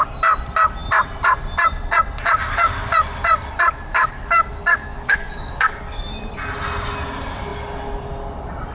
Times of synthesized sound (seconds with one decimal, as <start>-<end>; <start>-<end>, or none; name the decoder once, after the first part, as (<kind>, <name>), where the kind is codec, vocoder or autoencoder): 3.9-6.2 (codec, DAC)